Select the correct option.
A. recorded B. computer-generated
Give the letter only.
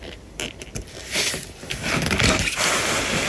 A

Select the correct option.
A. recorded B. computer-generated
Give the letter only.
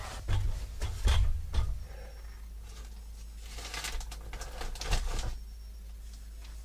A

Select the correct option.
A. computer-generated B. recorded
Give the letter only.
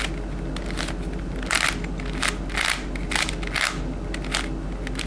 B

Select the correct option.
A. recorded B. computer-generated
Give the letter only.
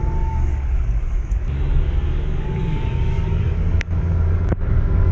B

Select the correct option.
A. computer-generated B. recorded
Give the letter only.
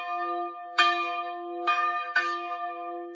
A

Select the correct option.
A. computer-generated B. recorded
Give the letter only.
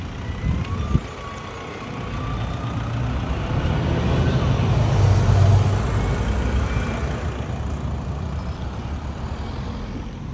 B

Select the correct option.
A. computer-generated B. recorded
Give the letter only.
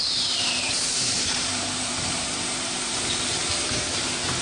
A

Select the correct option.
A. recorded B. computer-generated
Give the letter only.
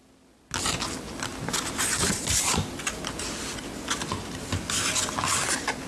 A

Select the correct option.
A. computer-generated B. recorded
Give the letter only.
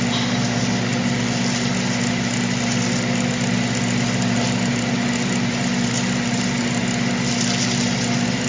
B